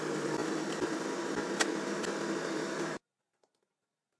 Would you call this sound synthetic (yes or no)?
no